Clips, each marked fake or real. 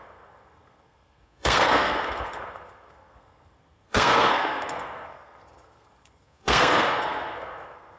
fake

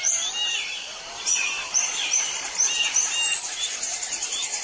real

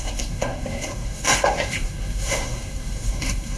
fake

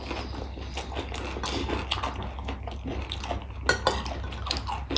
real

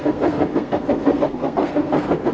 fake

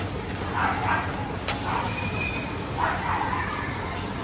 real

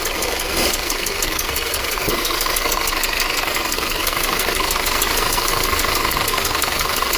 fake